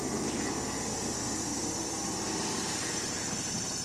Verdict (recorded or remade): recorded